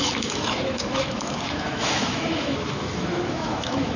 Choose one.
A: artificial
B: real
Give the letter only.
A